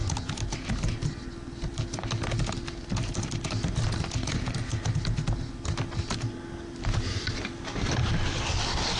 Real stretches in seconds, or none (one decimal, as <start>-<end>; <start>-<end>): 0.0-9.0